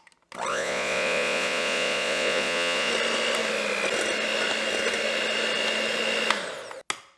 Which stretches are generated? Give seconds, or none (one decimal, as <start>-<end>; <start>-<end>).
0.5-2.9

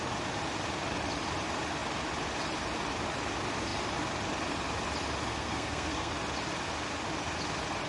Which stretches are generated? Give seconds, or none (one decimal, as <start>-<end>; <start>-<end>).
5.3-6.1

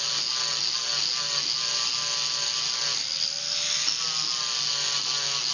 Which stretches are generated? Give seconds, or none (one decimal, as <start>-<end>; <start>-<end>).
none